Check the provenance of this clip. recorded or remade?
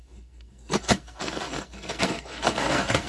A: remade